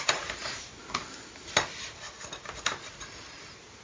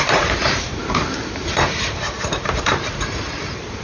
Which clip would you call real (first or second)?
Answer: first